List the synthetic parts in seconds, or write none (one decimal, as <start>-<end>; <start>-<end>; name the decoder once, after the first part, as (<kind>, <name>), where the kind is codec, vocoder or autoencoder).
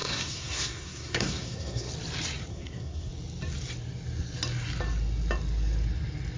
0.0-1.9 (codec, SNAC); 2.5-3.1